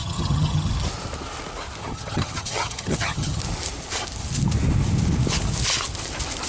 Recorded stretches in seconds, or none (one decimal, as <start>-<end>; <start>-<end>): 0.7-1.8; 3.4-6.5